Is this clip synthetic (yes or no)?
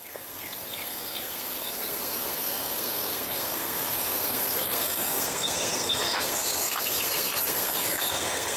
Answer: yes